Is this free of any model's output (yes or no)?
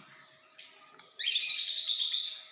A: yes